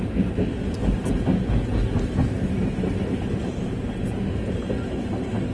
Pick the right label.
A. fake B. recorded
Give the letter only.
B